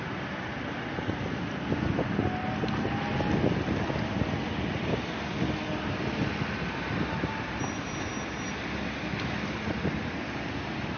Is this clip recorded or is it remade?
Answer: recorded